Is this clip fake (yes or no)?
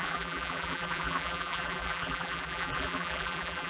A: yes